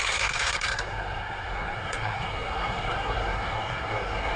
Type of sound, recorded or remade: remade